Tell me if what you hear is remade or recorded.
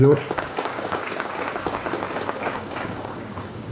remade